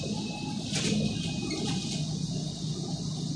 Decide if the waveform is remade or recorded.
recorded